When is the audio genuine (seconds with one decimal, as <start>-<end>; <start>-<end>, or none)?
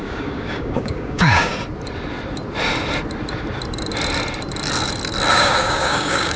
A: 1.5-5.3